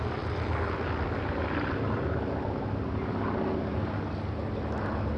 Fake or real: real